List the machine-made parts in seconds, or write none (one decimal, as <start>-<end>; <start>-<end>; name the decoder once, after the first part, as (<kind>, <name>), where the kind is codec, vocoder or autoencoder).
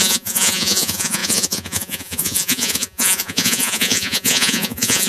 0.0-5.1 (vocoder, Vocos)